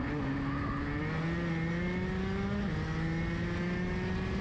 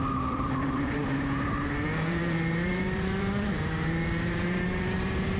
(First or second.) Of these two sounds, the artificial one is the second